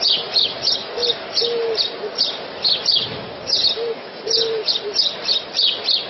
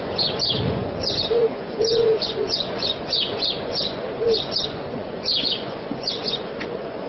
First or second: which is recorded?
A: first